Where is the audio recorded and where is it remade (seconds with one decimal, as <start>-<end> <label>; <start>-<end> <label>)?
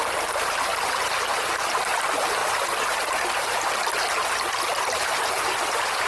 0.0-6.1 recorded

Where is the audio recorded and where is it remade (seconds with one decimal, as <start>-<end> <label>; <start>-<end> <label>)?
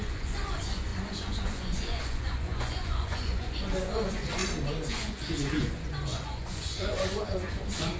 0.0-4.4 remade; 4.4-4.9 recorded; 4.9-8.0 remade